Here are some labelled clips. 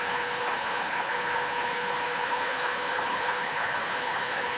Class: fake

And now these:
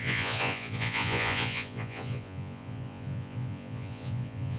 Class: fake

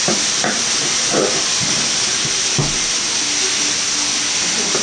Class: real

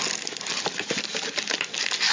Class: real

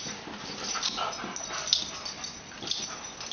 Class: real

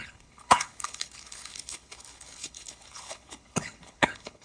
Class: fake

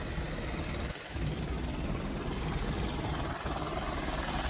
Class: real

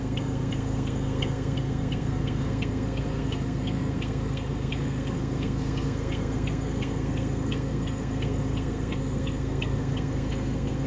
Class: fake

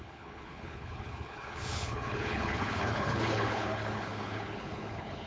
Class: fake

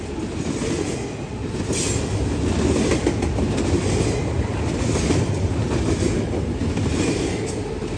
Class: real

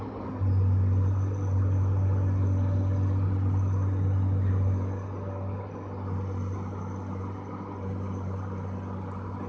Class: real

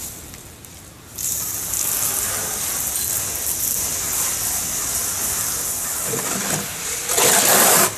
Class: real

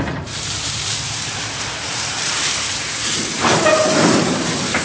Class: fake